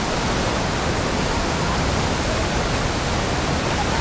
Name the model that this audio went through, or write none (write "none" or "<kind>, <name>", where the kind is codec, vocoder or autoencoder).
none